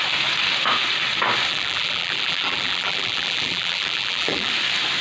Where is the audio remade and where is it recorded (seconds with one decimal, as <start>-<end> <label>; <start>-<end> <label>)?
0.0-1.5 recorded; 1.5-4.5 remade; 4.5-5.0 recorded